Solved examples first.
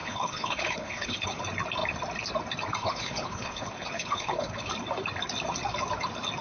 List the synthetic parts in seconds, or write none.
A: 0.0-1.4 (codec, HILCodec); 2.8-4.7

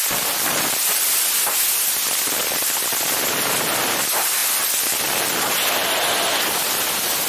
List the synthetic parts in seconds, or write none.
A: none

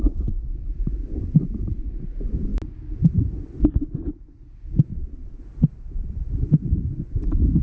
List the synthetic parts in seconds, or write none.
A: 4.9-5.4 (vocoder, WaveNeXt)